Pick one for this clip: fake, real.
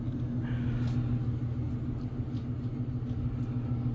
real